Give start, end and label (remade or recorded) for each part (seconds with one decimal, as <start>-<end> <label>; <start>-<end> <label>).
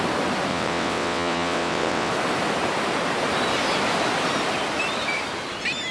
0.0-0.5 recorded; 0.5-2.1 remade; 2.1-5.9 recorded